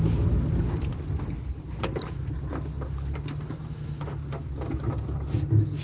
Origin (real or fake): real